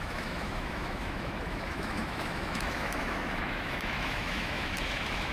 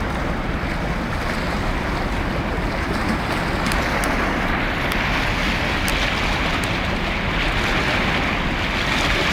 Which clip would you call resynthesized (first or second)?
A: first